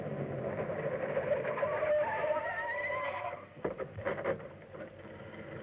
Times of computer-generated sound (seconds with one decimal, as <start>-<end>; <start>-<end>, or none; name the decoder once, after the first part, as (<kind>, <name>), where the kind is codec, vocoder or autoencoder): 3.0-3.7 (codec, SNAC)